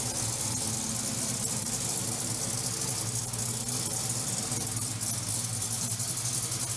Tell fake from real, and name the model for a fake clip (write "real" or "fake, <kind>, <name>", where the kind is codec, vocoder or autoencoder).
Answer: real